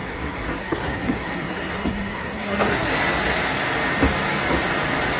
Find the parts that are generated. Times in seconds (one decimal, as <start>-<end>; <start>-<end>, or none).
0.0-2.9